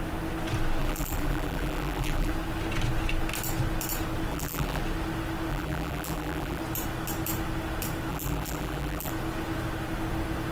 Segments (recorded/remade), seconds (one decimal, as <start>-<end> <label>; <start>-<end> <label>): 0.0-0.8 recorded; 0.8-2.3 remade; 2.3-4.3 recorded; 4.3-4.8 remade; 4.8-5.5 recorded; 5.5-6.6 remade; 6.6-8.1 recorded; 8.1-9.1 remade; 9.1-10.5 recorded